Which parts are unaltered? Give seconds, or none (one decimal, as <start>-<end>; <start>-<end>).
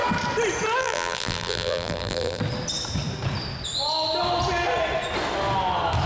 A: 0.0-0.8; 2.4-6.1